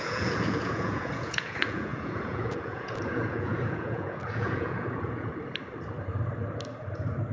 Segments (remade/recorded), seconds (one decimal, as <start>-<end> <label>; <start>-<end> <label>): 0.0-5.3 remade; 5.3-7.3 recorded